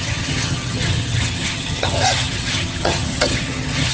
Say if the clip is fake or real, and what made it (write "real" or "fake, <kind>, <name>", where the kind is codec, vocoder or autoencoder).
fake, vocoder, HiFi-GAN